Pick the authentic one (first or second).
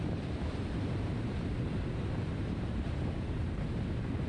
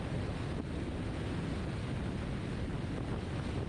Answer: second